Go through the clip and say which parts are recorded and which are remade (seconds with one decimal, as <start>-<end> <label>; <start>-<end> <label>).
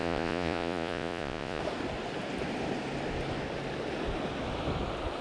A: 0.0-1.6 remade; 1.6-5.2 recorded